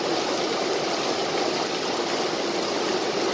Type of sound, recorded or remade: recorded